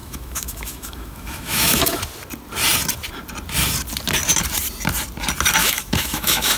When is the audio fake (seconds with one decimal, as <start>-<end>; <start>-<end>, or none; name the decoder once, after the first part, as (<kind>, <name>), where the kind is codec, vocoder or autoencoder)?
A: 0.0-2.0 (autoencoder, DAC-VAE); 5.6-6.6